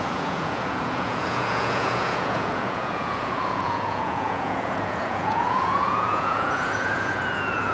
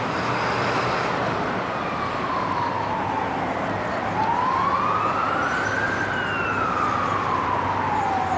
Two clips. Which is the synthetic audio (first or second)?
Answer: first